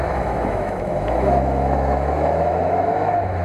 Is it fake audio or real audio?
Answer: fake